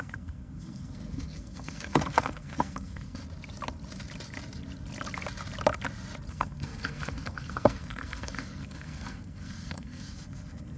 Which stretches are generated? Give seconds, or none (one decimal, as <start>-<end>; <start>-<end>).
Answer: 0.0-3.2; 6.3-10.8